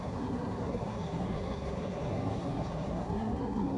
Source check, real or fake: fake